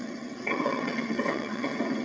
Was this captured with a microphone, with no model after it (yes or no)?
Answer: no